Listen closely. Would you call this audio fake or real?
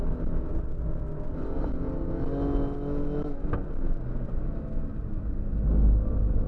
real